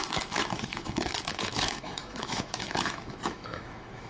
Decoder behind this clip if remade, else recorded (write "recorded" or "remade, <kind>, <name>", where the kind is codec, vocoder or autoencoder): remade, autoencoder, DAC-VAE